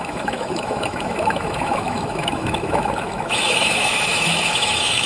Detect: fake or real fake